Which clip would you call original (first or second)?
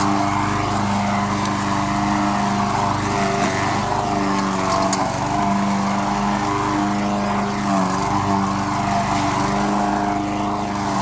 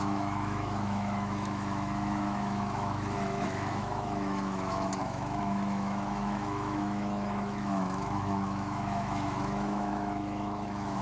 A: first